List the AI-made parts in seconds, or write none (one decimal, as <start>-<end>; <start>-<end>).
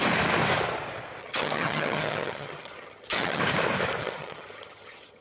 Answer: 1.2-3.4; 4.0-5.2